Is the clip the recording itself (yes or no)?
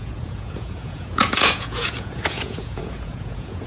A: no